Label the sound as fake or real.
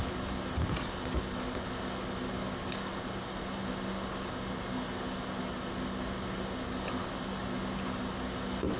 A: real